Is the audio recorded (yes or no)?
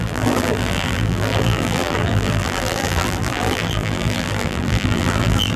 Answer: no